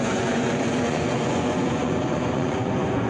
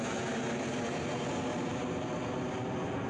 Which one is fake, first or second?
first